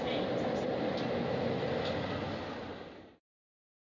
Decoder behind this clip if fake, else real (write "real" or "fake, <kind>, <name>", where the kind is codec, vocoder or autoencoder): real